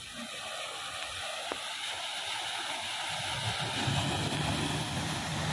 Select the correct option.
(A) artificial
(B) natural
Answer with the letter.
B